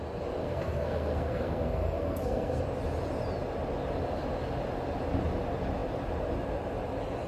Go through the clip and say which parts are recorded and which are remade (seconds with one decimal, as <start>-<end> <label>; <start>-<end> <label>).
0.0-0.4 recorded; 0.4-2.6 remade; 2.6-7.3 recorded